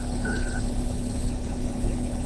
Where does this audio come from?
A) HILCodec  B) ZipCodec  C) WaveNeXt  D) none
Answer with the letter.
A